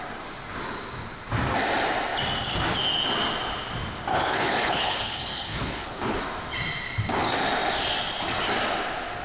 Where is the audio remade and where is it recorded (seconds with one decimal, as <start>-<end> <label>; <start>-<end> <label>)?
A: 0.0-4.1 recorded; 4.1-6.2 remade; 6.2-9.2 recorded